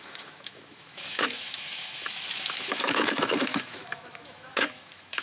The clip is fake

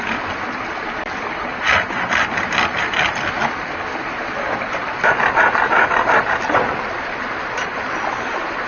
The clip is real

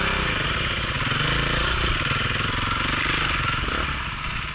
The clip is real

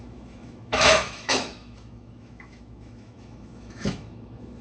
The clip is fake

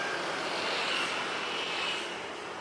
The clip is real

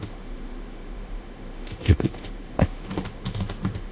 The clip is fake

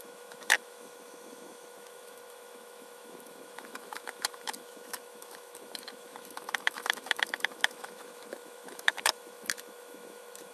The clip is fake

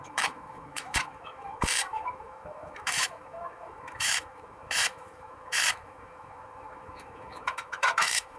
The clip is fake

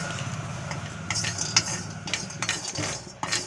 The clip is real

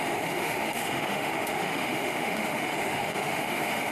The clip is fake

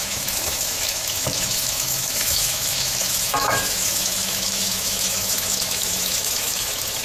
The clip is fake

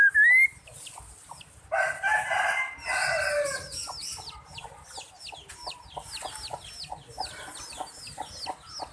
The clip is real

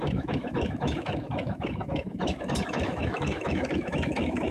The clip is fake